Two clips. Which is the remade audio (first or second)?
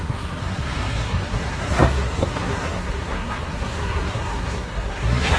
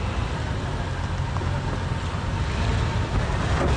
first